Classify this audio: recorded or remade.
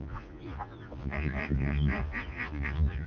remade